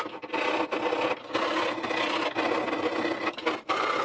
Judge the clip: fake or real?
real